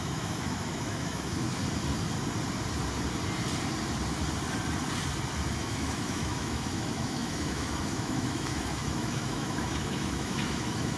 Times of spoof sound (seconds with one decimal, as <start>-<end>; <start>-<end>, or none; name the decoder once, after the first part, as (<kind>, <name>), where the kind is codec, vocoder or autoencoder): 0.0-1.6 (autoencoder, DAC-VAE); 5.5-11.0